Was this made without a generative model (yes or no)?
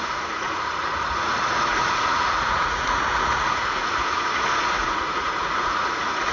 no